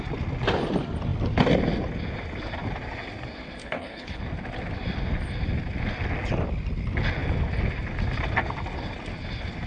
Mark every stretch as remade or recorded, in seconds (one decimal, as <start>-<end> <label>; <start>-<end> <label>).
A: 0.0-3.6 recorded; 3.6-4.2 remade; 4.2-9.7 recorded